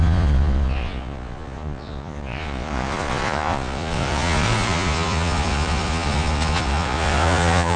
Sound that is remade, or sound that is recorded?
remade